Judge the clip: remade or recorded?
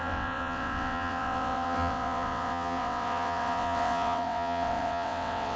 remade